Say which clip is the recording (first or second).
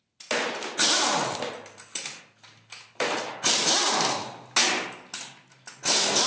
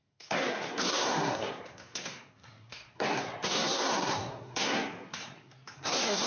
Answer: first